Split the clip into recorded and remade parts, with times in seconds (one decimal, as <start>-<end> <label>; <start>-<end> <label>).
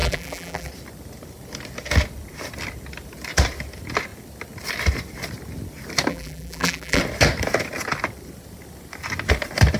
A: 0.0-0.7 remade; 0.7-6.1 recorded; 6.1-7.0 remade; 7.0-9.8 recorded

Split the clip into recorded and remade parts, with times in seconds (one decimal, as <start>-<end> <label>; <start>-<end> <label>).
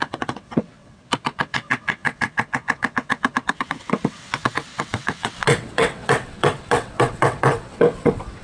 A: 0.0-8.4 remade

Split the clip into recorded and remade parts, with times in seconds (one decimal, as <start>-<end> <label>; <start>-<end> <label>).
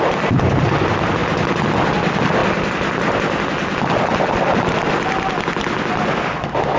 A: 0.0-6.8 recorded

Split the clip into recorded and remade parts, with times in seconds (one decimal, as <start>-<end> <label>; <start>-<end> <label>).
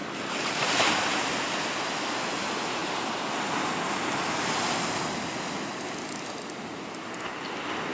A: 0.0-7.9 recorded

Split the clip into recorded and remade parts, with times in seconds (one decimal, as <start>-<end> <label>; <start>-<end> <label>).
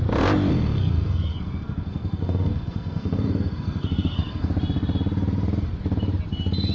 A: 0.0-0.5 recorded; 0.5-4.5 remade; 4.5-6.7 recorded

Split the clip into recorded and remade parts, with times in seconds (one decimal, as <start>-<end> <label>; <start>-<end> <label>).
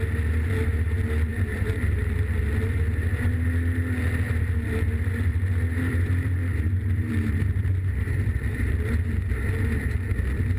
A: 0.0-1.3 recorded; 1.3-2.4 remade; 2.4-5.3 recorded; 5.3-8.8 remade; 8.8-10.6 recorded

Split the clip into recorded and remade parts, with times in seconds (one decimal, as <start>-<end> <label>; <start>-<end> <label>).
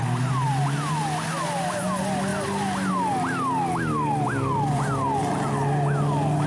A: 0.0-6.5 recorded